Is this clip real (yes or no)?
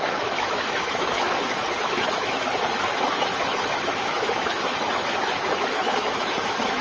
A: no